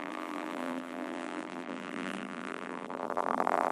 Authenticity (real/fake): fake